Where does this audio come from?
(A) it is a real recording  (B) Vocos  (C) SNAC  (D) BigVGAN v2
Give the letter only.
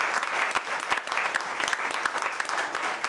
A